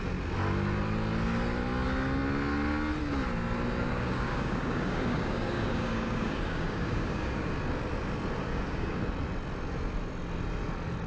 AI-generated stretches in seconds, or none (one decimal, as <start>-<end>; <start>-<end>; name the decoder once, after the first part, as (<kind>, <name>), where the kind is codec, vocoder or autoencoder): 3.9-7.5 (codec, DAC); 8.4-9.0